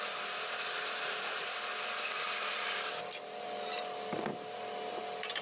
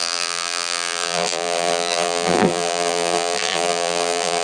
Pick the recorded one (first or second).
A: first